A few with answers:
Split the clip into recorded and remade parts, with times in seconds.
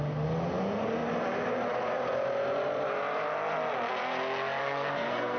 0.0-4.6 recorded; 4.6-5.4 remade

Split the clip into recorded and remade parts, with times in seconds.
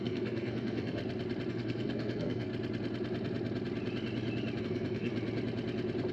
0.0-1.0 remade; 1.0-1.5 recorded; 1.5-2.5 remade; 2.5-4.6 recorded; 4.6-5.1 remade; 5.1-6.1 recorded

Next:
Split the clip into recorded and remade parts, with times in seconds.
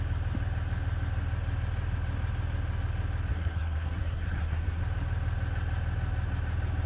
0.0-3.3 recorded; 3.3-4.8 remade; 4.8-6.9 recorded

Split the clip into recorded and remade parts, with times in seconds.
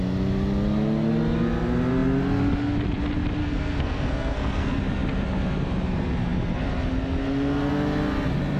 0.0-3.4 recorded; 3.4-4.7 remade; 4.7-8.6 recorded